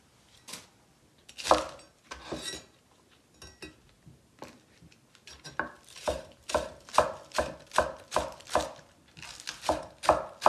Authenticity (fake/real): real